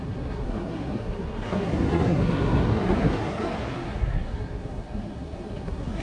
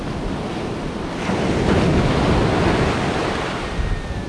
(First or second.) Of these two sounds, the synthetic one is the first